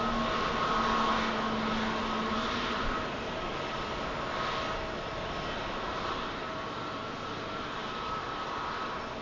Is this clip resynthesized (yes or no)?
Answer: no